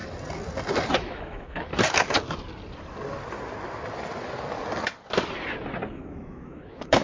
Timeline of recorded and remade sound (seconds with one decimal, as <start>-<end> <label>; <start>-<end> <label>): 0.0-1.0 recorded; 1.0-1.7 remade; 1.7-5.9 recorded; 5.9-7.0 remade